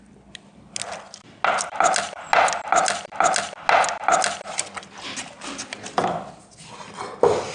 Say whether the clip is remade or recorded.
recorded